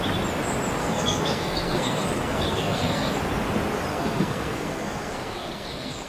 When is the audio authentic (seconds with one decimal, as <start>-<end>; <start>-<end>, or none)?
0.0-0.8; 3.2-3.9